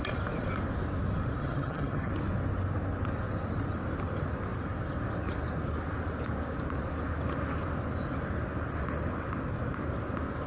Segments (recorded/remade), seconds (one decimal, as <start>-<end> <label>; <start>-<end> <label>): 0.0-1.4 recorded; 1.4-2.1 remade; 2.1-10.5 recorded

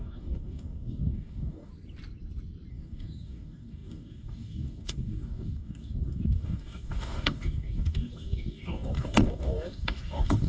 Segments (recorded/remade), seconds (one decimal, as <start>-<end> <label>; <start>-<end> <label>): 0.0-1.7 remade; 1.7-2.7 recorded; 2.7-10.5 remade

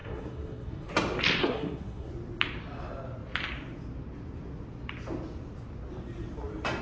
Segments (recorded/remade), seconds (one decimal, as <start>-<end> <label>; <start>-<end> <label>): 0.0-0.9 remade; 0.9-1.4 recorded; 1.4-2.1 remade; 2.1-6.8 recorded